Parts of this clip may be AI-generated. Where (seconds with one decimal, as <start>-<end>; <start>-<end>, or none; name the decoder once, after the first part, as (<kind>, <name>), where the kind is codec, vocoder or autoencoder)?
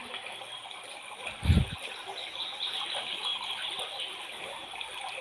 none